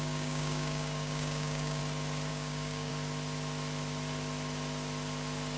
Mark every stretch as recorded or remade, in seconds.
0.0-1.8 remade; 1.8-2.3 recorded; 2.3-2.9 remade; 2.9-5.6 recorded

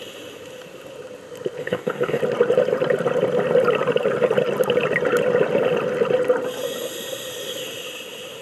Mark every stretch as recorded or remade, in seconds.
0.0-1.6 recorded; 1.6-2.2 remade; 2.2-8.4 recorded

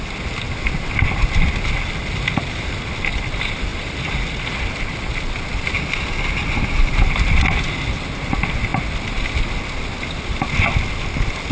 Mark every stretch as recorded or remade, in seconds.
0.0-11.5 recorded